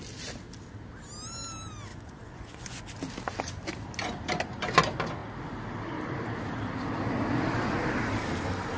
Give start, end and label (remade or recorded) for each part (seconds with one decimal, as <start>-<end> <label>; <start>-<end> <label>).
0.0-1.9 recorded; 1.9-2.8 remade; 2.8-8.8 recorded